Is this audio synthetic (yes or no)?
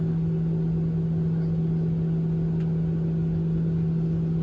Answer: no